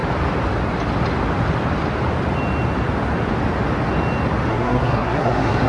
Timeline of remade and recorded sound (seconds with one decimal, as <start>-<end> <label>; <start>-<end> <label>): 0.0-4.5 recorded; 4.5-5.7 remade